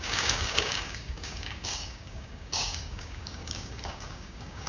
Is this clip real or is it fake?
fake